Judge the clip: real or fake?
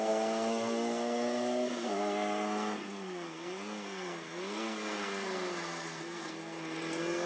fake